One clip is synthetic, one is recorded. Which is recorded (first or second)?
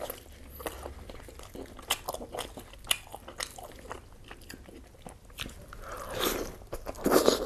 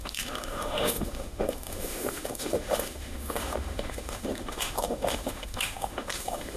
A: first